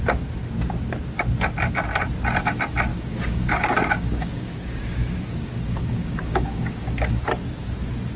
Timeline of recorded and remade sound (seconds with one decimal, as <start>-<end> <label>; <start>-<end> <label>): 0.0-2.9 recorded; 2.9-7.2 remade; 7.2-8.2 recorded